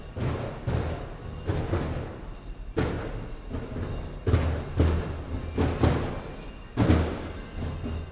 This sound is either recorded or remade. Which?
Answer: recorded